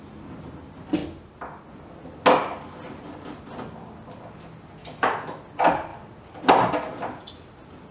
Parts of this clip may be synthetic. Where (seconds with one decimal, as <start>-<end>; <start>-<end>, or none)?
4.8-5.4